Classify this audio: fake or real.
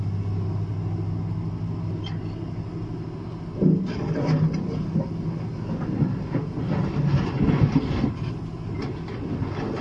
real